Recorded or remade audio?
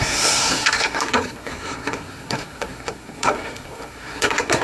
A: remade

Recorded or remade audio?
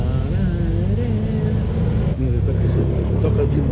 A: recorded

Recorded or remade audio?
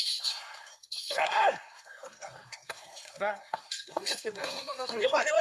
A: remade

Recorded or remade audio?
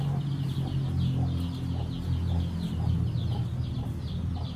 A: recorded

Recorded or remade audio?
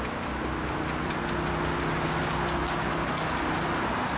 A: recorded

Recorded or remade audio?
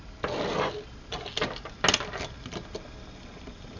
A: recorded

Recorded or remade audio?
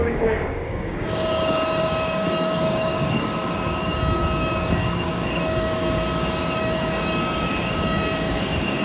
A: remade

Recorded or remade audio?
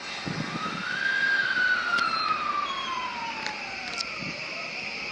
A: recorded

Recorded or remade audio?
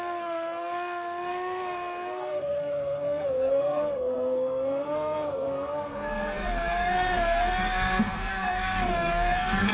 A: remade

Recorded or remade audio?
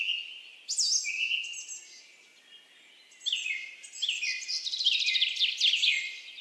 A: recorded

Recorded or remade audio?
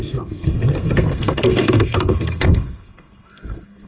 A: remade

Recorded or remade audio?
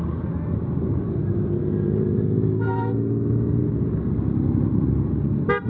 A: recorded